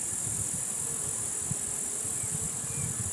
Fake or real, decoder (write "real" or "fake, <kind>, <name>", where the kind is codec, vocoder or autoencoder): real